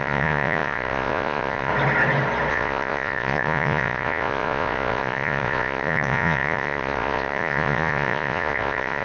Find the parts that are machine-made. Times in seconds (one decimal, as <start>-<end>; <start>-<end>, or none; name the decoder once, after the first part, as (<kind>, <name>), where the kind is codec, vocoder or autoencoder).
0.0-1.7 (vocoder, Vocos); 2.5-9.0